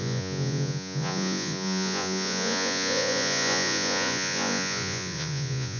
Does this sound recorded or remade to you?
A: remade